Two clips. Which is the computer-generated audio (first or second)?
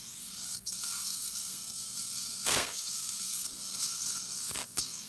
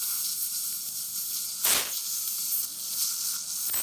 first